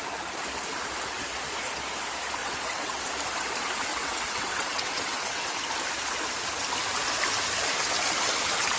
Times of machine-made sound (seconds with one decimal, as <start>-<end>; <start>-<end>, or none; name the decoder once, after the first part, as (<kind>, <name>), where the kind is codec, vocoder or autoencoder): 2.4-3.0 (vocoder, WaveNeXt); 3.9-5.6